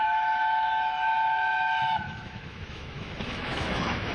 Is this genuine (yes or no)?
no